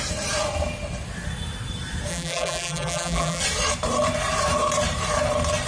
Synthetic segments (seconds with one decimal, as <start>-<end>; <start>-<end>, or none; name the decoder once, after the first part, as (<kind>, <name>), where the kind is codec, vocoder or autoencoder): 2.1-3.4 (vocoder, BigVGAN v2)